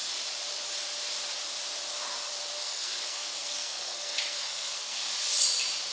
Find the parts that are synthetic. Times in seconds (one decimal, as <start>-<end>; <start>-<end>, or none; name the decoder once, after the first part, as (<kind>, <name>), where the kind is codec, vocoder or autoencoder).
2.6-5.0 (codec, SNAC)